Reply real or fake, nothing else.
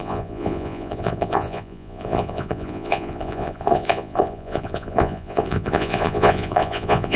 fake